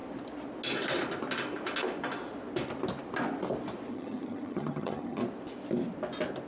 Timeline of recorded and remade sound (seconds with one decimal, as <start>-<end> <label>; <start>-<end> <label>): 0.0-3.9 recorded; 3.9-5.2 remade; 5.2-6.5 recorded